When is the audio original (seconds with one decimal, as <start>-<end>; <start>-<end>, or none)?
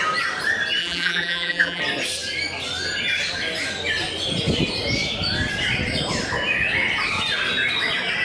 0.0-0.8; 1.8-8.2